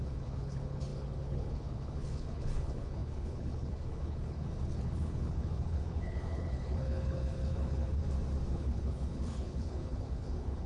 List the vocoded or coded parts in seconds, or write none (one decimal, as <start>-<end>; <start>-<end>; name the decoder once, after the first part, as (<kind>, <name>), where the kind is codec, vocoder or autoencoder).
0.0-8.0 (codec, HILCodec); 8.5-10.7